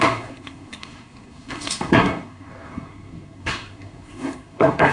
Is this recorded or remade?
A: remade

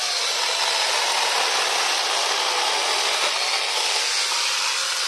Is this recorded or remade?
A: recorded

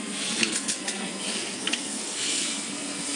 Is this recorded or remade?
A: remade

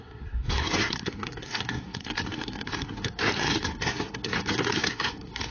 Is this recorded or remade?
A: remade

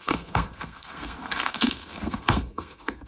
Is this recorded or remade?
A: remade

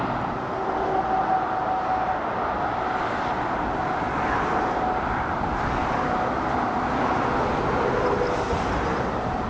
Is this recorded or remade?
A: recorded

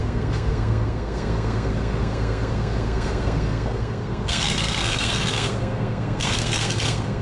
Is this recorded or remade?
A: remade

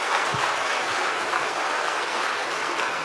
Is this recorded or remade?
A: remade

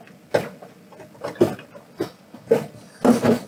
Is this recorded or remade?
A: recorded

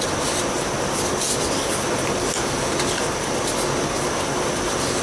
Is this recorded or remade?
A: recorded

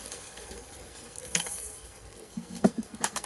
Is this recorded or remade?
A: remade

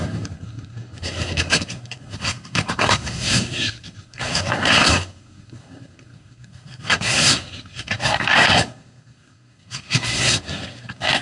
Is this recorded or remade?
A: remade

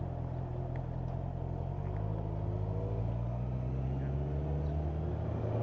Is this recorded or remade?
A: recorded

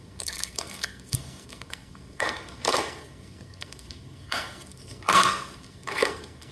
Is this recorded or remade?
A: remade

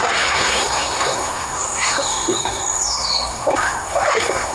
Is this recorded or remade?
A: remade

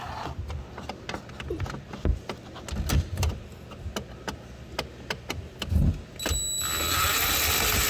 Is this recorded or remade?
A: recorded